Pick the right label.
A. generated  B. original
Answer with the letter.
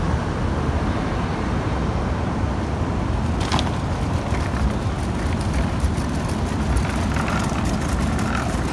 B